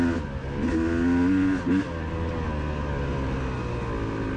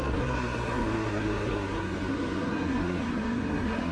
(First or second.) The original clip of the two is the first